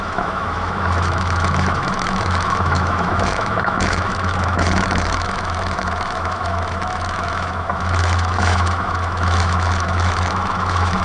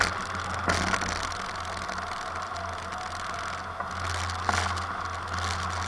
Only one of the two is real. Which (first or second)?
second